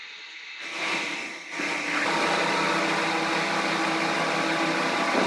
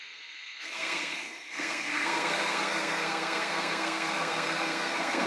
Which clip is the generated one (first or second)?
second